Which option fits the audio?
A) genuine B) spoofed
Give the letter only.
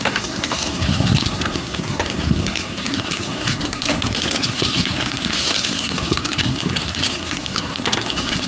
B